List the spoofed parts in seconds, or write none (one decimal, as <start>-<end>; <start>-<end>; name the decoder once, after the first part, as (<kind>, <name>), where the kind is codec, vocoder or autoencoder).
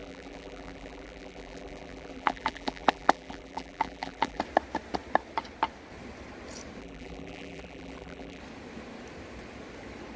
0.0-4.4 (vocoder, BigVGAN v2); 6.8-8.4